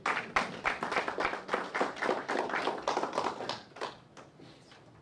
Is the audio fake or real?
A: real